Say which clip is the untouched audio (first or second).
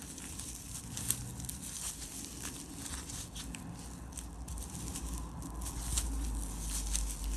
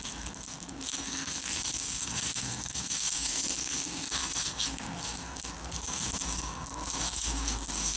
first